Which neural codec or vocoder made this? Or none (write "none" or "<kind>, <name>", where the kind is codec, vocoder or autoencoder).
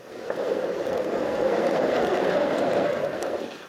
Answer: codec, SNAC